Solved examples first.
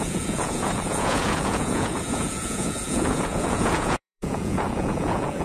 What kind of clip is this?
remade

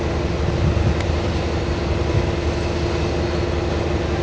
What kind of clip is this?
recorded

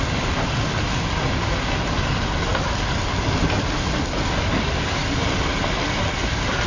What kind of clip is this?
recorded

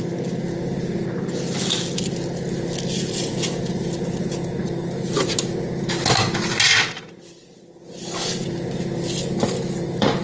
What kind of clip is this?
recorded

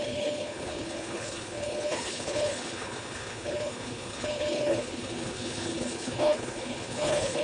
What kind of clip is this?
remade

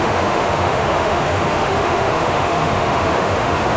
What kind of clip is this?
remade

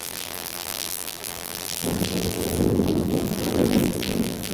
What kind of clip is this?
remade